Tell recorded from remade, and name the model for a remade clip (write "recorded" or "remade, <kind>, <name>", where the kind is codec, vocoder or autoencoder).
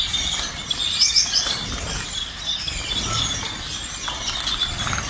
recorded